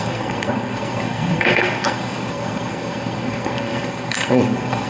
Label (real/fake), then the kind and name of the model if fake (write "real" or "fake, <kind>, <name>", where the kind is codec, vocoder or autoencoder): fake, codec, SNAC